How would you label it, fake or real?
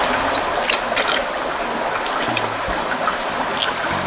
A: real